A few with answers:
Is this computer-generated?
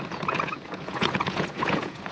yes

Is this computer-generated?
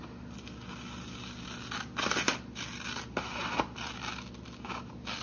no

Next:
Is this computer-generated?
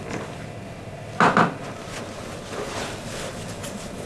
no